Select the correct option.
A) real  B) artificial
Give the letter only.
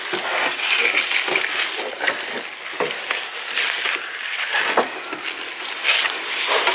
A